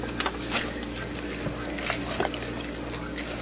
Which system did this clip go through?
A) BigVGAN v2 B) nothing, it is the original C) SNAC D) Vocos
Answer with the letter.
B